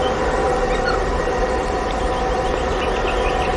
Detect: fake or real real